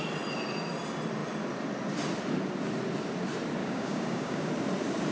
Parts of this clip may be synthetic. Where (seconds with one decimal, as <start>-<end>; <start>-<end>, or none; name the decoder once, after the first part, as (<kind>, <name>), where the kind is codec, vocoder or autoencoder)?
3.6-4.5 (codec, DAC)